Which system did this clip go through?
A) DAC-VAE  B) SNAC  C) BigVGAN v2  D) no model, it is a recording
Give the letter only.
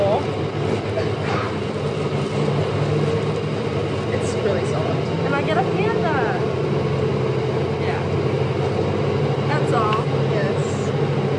D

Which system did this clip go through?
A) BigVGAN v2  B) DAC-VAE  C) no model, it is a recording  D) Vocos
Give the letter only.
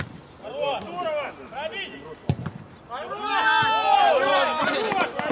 C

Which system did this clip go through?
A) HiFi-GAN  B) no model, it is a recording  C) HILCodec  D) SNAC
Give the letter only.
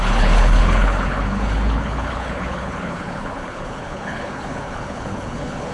C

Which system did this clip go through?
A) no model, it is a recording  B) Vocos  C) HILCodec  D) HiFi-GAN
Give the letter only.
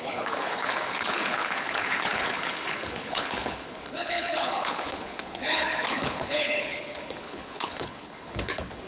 C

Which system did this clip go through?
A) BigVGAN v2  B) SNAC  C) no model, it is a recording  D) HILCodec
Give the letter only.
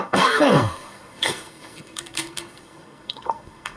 B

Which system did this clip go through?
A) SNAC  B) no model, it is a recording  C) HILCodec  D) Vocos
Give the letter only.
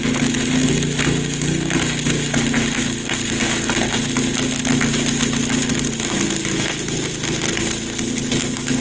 B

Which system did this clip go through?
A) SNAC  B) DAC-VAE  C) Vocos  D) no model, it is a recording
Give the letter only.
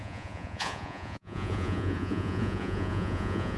C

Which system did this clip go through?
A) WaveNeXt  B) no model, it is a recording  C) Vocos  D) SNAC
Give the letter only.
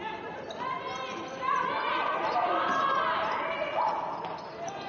B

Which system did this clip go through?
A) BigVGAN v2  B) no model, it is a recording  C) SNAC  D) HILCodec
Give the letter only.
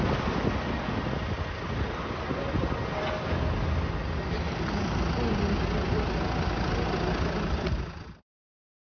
B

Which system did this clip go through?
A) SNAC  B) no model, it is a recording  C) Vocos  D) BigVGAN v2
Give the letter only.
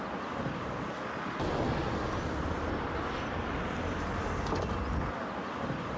B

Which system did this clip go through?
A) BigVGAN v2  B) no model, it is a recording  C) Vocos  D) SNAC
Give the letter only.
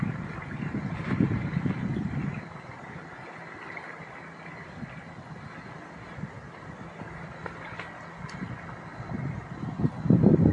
B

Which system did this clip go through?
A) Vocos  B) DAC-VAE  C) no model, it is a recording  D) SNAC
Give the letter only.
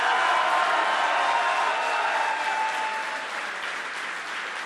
C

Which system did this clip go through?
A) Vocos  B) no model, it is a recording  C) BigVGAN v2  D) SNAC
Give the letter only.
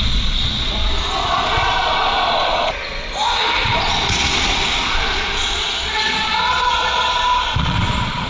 A